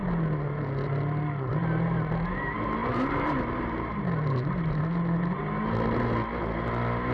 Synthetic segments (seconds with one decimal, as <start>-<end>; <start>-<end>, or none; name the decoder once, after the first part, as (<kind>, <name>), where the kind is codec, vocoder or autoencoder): 2.8-4.8 (vocoder, BigVGAN v2)